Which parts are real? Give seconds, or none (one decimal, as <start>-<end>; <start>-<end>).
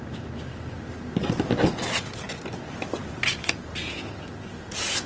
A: 0.0-5.1